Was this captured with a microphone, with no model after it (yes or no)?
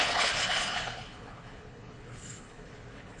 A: no